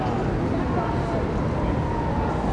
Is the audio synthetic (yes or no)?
no